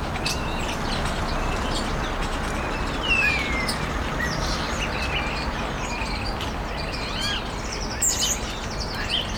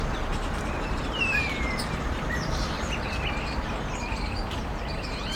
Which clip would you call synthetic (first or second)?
second